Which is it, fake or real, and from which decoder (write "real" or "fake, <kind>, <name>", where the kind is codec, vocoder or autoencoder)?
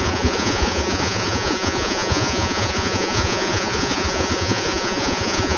fake, vocoder, Vocos